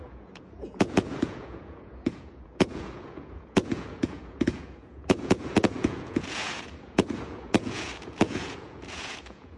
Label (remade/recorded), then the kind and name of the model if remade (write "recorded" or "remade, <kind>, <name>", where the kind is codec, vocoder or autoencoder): remade, vocoder, Vocos